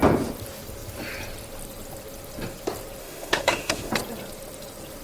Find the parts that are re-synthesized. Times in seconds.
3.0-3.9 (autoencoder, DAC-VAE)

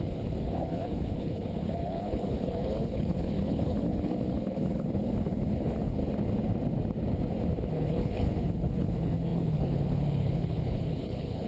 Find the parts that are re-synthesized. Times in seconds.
0.0-6.0 (codec, HILCodec); 7.7-11.5

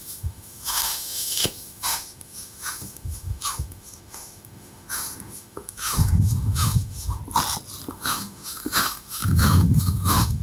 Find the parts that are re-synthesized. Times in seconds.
0.0-7.2 (autoencoder, DAC-VAE); 7.9-10.4

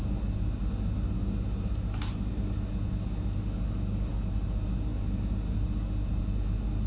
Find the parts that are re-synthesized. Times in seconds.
none